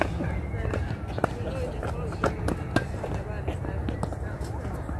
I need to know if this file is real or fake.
real